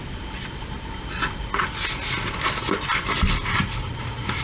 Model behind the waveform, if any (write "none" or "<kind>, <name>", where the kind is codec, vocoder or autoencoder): none